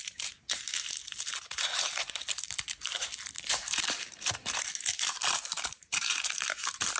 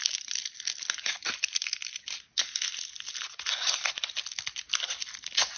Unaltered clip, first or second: second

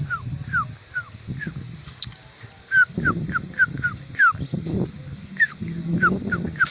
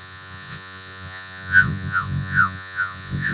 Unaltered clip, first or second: first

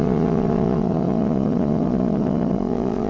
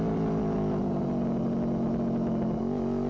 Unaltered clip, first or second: second